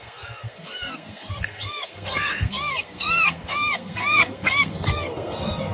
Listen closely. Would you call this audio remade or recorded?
remade